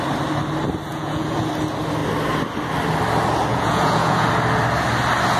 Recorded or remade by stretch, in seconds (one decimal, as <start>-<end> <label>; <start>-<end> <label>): 0.0-0.9 recorded; 0.9-1.5 remade; 1.5-3.5 recorded; 3.5-4.3 remade; 4.3-5.4 recorded